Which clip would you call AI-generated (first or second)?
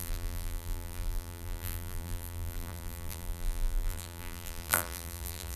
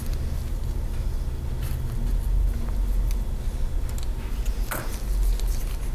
first